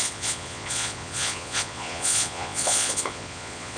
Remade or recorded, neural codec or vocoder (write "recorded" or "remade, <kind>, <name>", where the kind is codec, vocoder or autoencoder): remade, vocoder, Vocos